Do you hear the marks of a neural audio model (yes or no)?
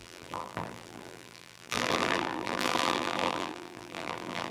yes